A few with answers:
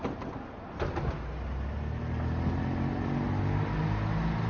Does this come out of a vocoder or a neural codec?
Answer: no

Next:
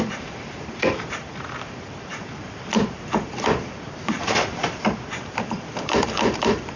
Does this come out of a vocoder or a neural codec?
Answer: yes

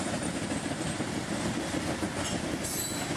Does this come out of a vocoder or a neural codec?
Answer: no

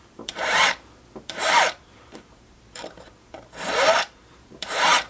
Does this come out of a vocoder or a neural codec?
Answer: yes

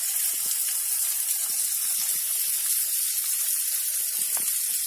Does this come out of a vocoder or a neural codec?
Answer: no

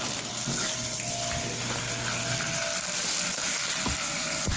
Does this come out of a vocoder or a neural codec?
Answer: no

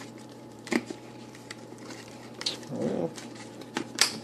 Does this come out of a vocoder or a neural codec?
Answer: yes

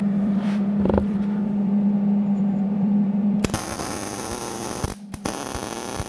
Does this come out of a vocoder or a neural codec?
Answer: yes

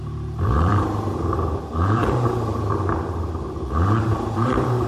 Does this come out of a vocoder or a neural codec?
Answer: yes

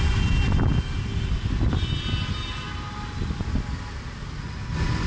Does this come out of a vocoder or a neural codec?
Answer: no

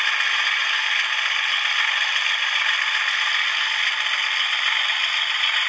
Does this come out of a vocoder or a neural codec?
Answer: no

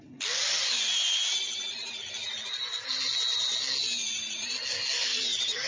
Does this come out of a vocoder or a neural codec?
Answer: no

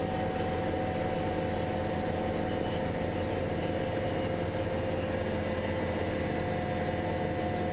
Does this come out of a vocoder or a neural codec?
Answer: no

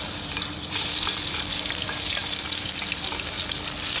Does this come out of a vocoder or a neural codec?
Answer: no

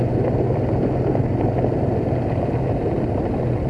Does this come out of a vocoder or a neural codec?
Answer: no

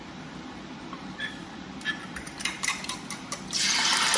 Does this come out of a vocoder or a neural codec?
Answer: yes